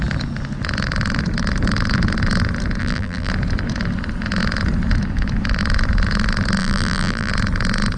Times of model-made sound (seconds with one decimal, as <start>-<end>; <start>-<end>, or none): 2.8-3.3; 6.6-7.3